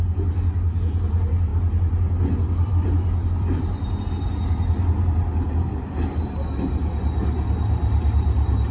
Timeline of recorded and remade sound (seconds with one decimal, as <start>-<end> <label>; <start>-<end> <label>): 0.0-8.7 recorded